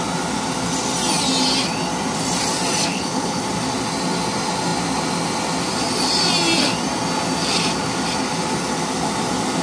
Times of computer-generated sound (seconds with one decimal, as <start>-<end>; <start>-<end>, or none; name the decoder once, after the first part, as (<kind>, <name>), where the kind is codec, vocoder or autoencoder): 2.9-3.4 (codec, HILCodec)